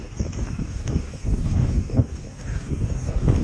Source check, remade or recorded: remade